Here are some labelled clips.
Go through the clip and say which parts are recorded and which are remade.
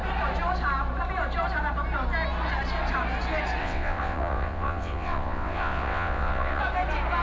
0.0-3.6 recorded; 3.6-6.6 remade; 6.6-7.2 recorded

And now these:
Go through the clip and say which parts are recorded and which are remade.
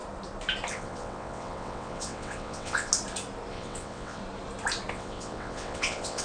0.0-0.7 recorded; 0.7-2.9 remade; 2.9-3.5 recorded; 3.5-4.2 remade; 4.2-4.9 recorded; 4.9-6.2 remade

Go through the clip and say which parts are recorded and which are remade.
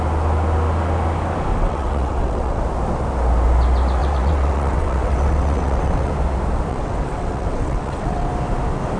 0.0-1.5 recorded; 1.5-2.6 remade; 2.6-4.0 recorded; 4.0-6.1 remade; 6.1-6.7 recorded; 6.7-8.3 remade; 8.3-9.0 recorded